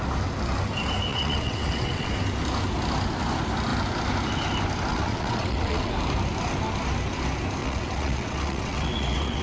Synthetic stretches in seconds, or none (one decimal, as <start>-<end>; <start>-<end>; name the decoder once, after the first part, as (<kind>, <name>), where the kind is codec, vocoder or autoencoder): 1.1-2.1 (vocoder, WaveNeXt); 4.9-5.9; 7.6-9.4